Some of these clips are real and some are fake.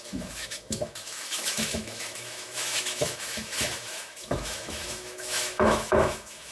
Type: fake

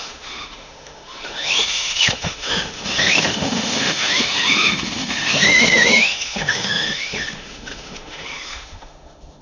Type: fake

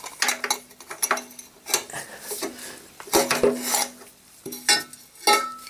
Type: real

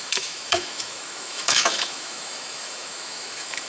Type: fake